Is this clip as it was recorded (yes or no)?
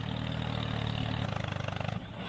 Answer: yes